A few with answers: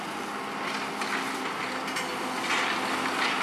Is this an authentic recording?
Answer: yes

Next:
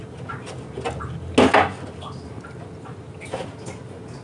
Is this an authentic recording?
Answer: yes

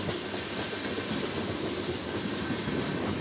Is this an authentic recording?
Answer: yes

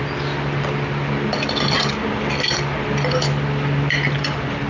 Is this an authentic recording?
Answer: yes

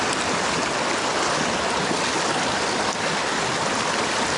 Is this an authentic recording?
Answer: yes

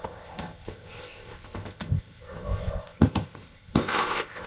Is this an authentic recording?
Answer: no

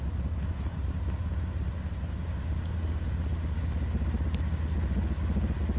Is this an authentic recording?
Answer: yes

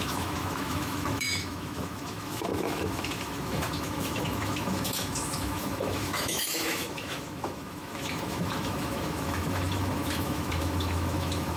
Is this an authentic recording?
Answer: no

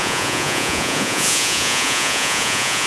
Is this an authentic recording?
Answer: no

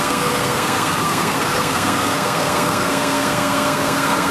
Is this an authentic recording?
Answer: no